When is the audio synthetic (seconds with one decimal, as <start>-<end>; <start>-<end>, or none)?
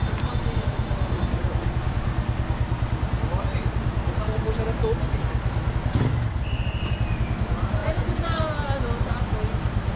7.8-8.5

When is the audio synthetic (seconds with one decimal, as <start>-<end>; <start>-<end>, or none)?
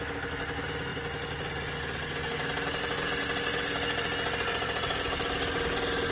none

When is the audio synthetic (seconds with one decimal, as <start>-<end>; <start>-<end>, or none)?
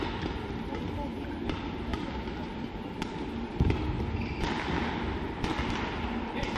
none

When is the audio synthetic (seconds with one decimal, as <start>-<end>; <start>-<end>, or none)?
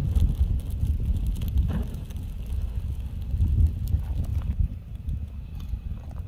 4.3-5.1